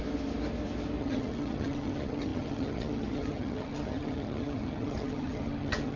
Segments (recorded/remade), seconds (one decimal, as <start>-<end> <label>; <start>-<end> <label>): 0.0-1.0 recorded; 1.0-6.0 remade